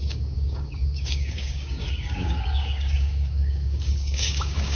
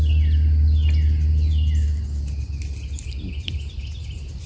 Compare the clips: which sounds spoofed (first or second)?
first